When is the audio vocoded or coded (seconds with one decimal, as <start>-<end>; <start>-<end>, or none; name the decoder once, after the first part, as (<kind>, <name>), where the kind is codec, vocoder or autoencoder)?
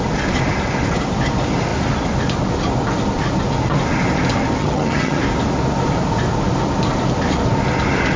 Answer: 4.6-5.2 (vocoder, HiFi-GAN)